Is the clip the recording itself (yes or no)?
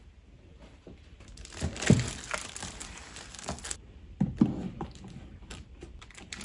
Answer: no